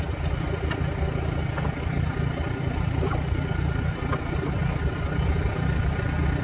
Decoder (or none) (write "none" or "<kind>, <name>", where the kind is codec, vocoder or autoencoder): none